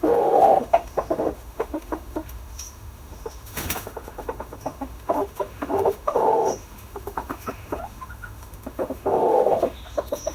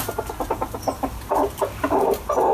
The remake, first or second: first